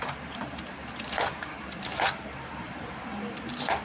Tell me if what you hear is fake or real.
fake